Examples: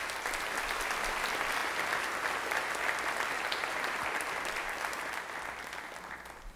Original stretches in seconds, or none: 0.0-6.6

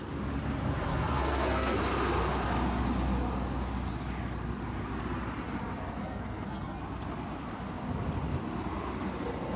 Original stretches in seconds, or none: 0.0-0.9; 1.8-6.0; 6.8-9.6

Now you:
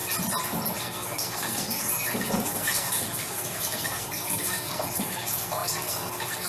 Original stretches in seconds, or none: 0.0-0.8

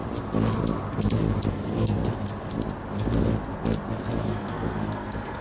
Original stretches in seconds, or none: 0.0-1.5; 2.0-4.2